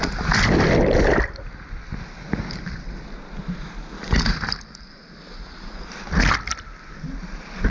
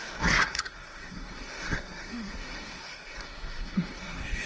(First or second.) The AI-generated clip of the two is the second